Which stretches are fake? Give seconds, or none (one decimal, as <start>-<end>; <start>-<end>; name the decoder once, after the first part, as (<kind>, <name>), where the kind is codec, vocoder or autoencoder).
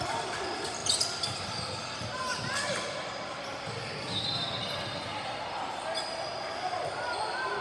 none